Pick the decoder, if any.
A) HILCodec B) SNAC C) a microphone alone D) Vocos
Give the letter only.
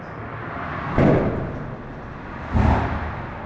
C